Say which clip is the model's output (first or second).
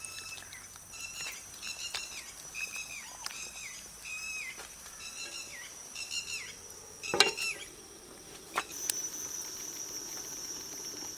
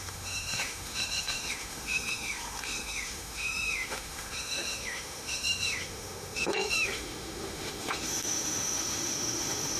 second